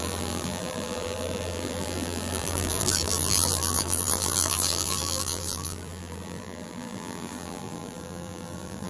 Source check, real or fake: fake